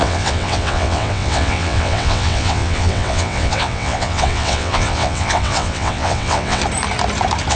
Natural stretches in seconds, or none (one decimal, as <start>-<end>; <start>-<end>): 6.6-7.5